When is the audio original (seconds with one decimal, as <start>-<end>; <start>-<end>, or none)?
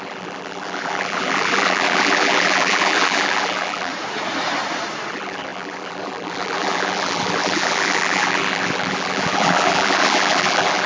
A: 3.9-5.1